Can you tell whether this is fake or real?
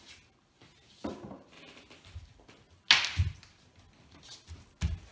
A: real